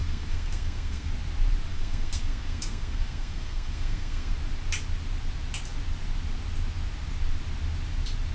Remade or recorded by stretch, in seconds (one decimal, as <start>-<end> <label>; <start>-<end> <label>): 0.0-1.1 remade; 1.1-1.7 recorded; 1.7-4.3 remade; 4.3-8.3 recorded